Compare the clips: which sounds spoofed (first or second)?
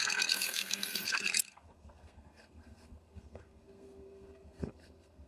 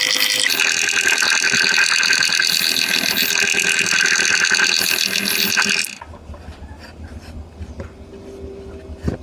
first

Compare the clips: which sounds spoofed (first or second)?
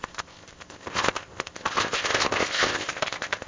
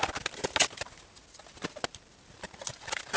first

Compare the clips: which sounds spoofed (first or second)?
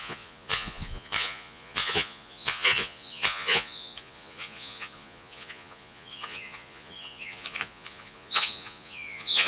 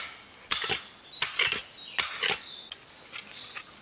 first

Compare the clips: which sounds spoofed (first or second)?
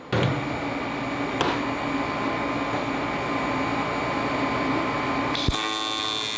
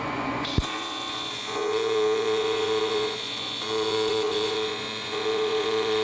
second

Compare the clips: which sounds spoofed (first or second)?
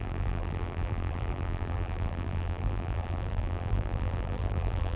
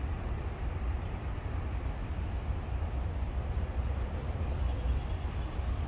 first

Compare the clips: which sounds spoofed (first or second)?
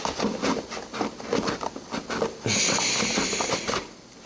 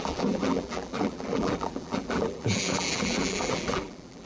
second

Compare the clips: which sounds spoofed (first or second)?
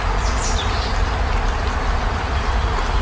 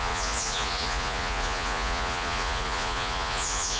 second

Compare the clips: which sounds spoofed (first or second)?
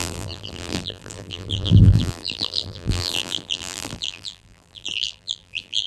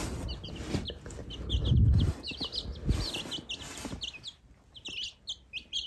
first